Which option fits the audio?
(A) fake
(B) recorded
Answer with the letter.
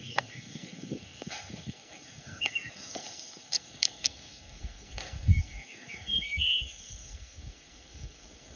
A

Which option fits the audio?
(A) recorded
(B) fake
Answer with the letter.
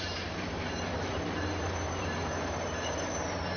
B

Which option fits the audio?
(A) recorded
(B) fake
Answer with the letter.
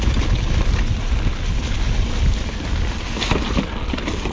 A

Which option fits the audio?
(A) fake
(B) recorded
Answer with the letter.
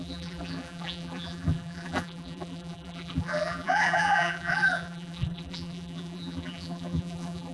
A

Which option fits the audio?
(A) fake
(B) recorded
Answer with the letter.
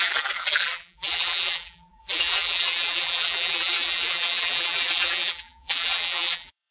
A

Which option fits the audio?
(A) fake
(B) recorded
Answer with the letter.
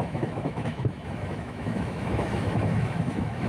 A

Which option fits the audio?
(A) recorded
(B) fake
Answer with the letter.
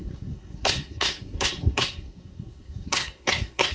B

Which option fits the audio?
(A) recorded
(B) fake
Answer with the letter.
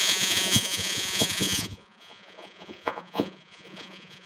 B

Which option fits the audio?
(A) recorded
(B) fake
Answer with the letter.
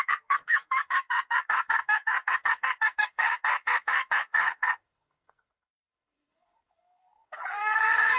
B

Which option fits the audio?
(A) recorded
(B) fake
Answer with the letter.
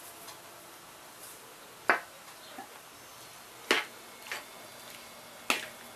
A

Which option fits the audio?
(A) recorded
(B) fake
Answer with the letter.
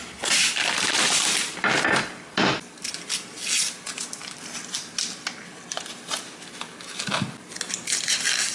A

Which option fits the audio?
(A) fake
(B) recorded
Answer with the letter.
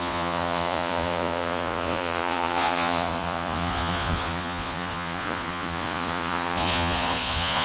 A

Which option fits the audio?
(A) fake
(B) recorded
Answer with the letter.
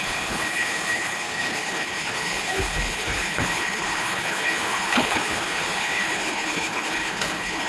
A